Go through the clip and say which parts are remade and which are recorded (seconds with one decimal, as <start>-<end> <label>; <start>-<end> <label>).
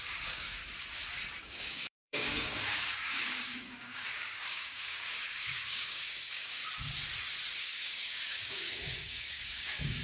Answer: 0.0-0.6 remade; 0.6-1.4 recorded; 1.4-6.6 remade; 6.6-7.6 recorded; 7.6-10.0 remade